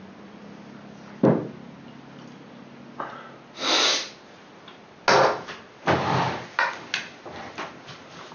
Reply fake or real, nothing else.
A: real